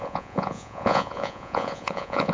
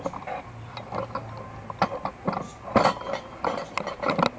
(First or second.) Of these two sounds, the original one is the second